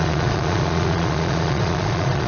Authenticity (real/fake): fake